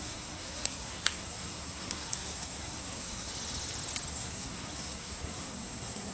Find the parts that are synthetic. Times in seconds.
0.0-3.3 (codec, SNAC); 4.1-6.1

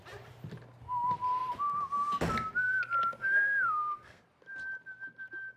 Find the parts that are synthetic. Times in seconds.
3.2-4.2 (codec, SNAC)

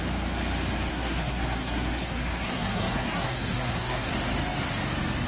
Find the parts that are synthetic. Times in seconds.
0.9-4.1 (codec, SNAC)